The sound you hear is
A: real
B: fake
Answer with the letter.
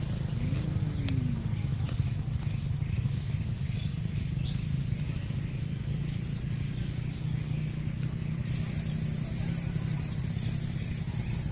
A